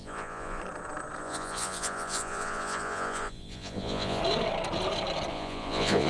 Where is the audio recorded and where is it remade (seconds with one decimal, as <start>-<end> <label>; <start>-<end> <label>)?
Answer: 0.0-0.6 remade; 0.6-1.2 recorded; 1.2-4.2 remade; 4.2-5.3 recorded; 5.3-6.1 remade